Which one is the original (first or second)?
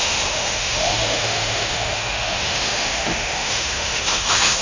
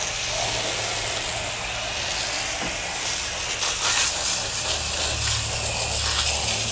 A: second